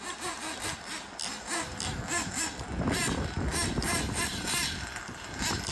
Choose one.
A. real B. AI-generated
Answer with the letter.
A